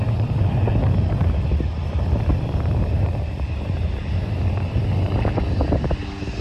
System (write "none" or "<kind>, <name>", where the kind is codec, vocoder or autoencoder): none